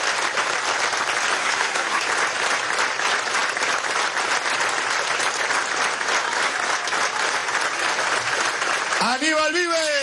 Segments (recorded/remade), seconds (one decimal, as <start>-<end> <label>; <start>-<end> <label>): 0.0-1.4 recorded; 1.4-2.0 remade; 2.0-10.0 recorded